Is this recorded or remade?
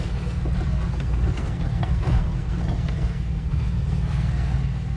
remade